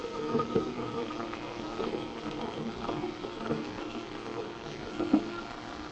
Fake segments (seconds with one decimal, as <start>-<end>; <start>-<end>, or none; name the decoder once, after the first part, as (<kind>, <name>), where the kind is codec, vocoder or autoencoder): 0.0-5.9 (codec, SNAC)